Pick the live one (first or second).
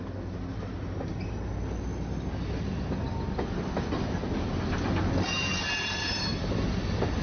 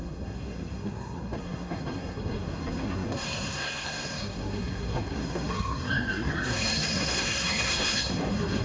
first